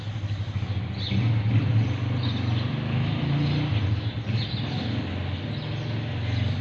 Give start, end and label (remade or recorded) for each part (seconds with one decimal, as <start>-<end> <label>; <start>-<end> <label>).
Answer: 0.0-2.7 recorded; 2.7-3.2 remade; 3.2-6.6 recorded